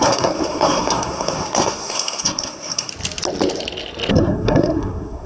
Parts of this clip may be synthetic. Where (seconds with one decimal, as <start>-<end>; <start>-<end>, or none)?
0.0-2.9; 4.1-5.3